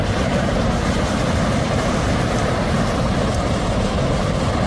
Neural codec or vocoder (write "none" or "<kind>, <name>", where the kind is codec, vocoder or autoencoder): vocoder, BigVGAN v2